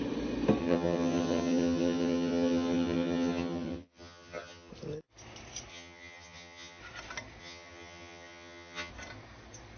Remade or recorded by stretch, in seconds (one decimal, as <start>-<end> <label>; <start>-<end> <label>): 0.0-0.6 recorded; 0.6-4.7 remade; 4.7-5.7 recorded; 5.7-6.8 remade; 6.8-7.4 recorded; 7.4-8.9 remade; 8.9-9.8 recorded